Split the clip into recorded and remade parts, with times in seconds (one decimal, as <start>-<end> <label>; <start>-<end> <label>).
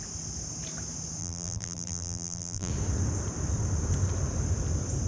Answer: 0.0-1.2 recorded; 1.2-2.7 remade; 2.7-5.1 recorded